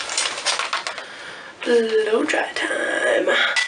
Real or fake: real